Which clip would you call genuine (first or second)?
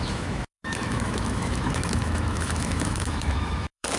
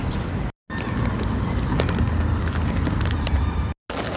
second